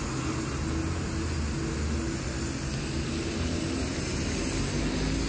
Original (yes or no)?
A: yes